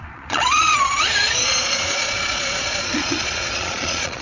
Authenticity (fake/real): fake